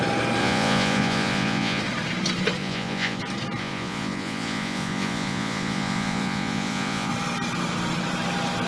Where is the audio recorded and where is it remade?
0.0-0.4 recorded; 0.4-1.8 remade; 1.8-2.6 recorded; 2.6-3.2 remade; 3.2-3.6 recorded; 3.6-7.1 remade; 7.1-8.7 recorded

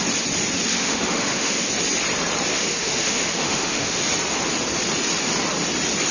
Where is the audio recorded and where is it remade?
0.0-0.7 recorded; 0.7-1.7 remade; 1.7-2.5 recorded; 2.5-4.0 remade; 4.0-6.1 recorded

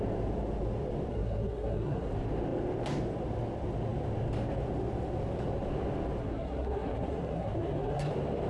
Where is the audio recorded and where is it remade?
0.0-1.1 recorded; 1.1-2.1 remade; 2.1-6.2 recorded; 6.2-8.1 remade; 8.1-8.5 recorded

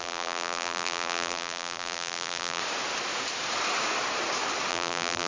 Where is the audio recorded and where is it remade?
0.0-2.6 remade; 2.6-4.7 recorded; 4.7-5.3 remade